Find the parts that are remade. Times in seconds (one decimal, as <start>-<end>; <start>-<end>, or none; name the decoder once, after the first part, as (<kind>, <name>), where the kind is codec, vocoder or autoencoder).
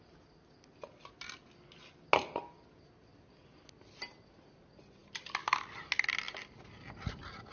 none